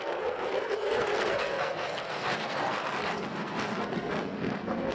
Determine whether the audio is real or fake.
fake